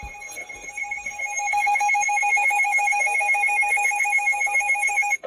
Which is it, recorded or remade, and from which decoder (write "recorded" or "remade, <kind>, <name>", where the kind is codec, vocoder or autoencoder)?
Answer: remade, codec, SNAC